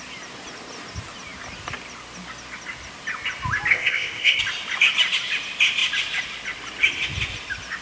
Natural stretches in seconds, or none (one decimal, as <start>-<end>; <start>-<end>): 0.0-3.7; 4.4-7.8